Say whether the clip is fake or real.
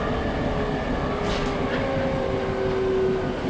real